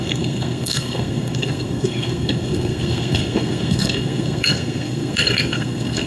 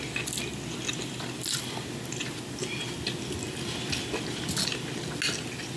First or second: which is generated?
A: first